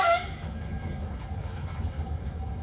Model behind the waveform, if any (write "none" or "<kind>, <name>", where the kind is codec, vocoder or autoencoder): codec, DAC